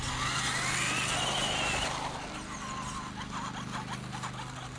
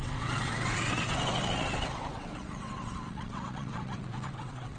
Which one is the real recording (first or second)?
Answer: first